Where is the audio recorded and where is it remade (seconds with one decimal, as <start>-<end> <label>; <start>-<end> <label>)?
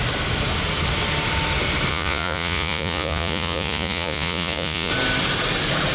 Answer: 0.0-1.9 recorded; 1.9-4.9 remade; 4.9-5.9 recorded